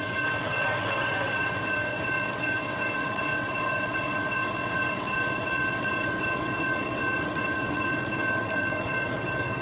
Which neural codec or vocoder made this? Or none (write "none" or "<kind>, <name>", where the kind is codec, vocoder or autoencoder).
vocoder, WaveNeXt